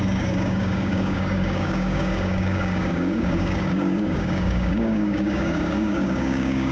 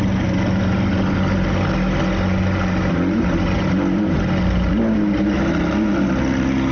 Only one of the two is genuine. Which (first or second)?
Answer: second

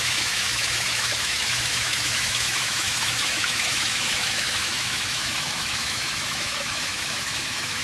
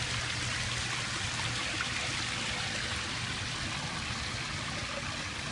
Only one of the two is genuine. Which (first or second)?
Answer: second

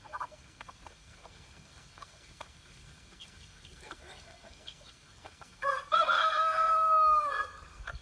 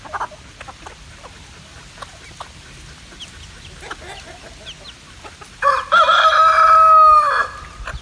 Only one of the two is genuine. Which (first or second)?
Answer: second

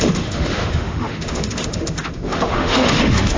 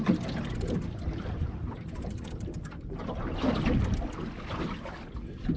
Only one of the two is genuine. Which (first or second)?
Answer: second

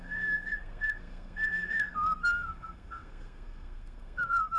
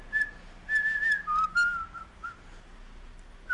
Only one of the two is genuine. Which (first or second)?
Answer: second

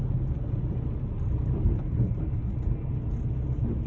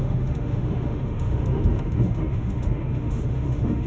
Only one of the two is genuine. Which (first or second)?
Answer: first